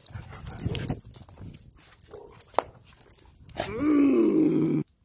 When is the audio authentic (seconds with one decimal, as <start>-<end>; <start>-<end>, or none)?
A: 0.7-5.0